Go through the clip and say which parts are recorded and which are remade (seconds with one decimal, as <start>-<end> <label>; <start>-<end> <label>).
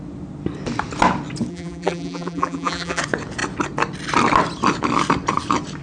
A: 0.0-1.5 recorded; 1.5-3.0 remade; 3.0-5.8 recorded